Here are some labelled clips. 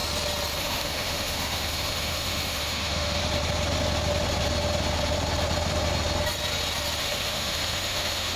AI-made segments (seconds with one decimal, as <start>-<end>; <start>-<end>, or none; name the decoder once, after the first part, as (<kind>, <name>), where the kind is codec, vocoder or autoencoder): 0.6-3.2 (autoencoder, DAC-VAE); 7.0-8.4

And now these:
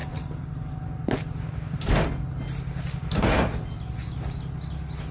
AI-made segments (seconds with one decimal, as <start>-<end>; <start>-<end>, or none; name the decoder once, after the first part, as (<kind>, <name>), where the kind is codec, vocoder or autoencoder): 0.0-0.7 (vocoder, BigVGAN v2)

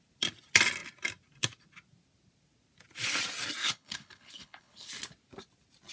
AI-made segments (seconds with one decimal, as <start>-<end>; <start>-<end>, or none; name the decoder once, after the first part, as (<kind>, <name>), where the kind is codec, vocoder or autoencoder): 3.6-4.9 (codec, HILCodec)

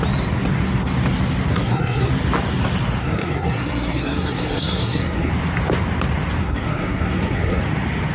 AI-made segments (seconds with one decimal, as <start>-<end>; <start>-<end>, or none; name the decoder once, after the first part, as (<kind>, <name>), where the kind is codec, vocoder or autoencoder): 1.5-2.1 (codec, SNAC); 3.0-5.3; 6.4-7.6

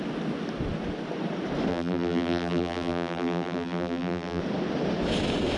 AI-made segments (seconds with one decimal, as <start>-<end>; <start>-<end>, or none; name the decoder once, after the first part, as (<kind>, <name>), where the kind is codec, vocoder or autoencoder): 1.7-4.4 (vocoder, BigVGAN v2)

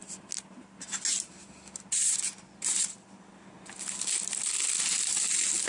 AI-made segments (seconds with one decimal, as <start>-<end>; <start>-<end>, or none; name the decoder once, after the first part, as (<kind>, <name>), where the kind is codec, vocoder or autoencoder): none